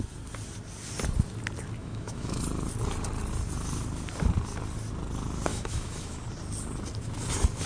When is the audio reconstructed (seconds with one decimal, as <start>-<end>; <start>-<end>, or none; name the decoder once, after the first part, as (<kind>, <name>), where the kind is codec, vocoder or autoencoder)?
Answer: 1.8-2.4 (autoencoder, DAC-VAE); 5.5-6.2